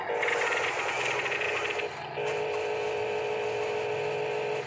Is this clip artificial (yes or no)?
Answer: no